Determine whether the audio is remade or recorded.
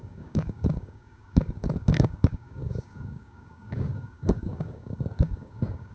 remade